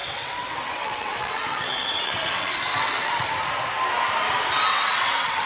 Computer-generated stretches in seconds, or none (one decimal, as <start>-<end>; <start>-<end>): 0.0-3.3; 4.7-5.5